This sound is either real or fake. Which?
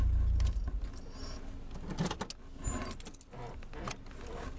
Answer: real